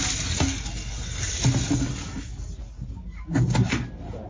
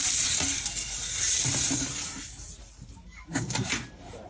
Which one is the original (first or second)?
first